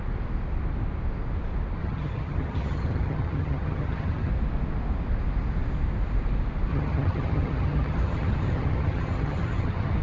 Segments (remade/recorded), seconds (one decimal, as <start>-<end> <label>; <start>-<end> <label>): 0.0-1.8 recorded; 1.8-4.3 remade; 4.3-6.7 recorded; 6.7-10.0 remade